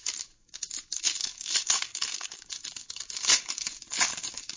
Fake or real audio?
fake